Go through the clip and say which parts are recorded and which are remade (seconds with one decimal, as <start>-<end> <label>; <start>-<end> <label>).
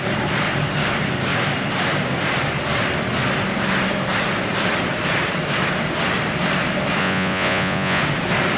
0.0-7.0 recorded; 7.0-8.0 remade; 8.0-8.6 recorded